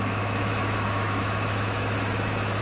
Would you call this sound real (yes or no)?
no